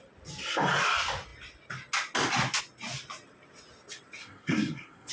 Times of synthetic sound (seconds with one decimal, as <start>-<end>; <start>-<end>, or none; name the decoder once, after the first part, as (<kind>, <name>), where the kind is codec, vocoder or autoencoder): 4.2-5.1 (codec, SNAC)